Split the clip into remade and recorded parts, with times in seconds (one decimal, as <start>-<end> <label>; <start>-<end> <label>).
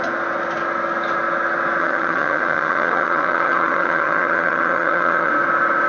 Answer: 0.0-1.8 recorded; 1.8-5.3 remade; 5.3-5.9 recorded